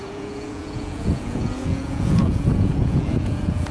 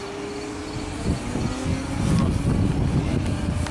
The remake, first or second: first